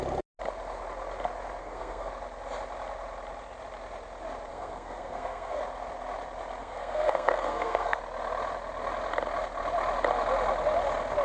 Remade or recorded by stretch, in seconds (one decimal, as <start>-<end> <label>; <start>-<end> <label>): 0.0-1.6 recorded; 1.6-2.1 remade; 2.1-4.5 recorded; 4.5-5.6 remade; 5.6-6.6 recorded; 6.6-8.0 remade; 8.0-11.2 recorded